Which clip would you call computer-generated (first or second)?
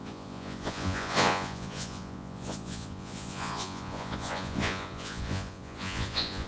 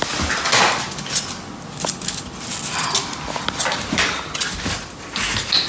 first